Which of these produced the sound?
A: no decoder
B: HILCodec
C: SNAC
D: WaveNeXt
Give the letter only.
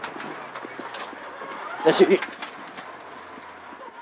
A